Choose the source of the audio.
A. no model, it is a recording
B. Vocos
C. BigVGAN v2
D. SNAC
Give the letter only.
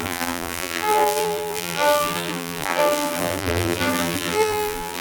C